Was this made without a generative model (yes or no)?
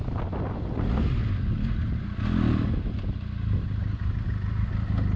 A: yes